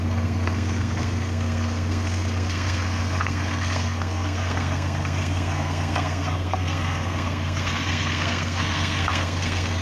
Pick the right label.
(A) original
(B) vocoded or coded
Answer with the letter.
B